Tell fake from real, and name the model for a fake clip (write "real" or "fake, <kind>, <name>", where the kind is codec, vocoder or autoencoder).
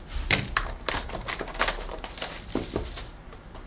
real